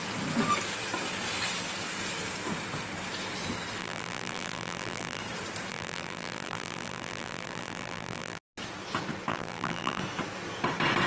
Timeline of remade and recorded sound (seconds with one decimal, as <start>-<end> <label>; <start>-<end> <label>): 0.0-3.8 recorded; 3.8-5.2 remade; 5.2-5.7 recorded; 5.7-8.4 remade; 8.4-9.3 recorded; 9.3-10.0 remade; 10.0-11.1 recorded